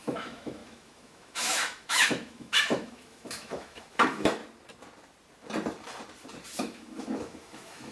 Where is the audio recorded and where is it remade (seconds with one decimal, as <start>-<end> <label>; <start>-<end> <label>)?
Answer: 0.0-4.4 remade; 4.4-6.6 recorded; 6.6-7.9 remade